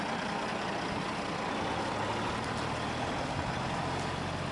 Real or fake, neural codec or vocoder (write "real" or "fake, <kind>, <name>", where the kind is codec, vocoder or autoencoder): real